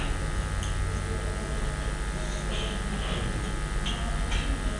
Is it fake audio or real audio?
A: real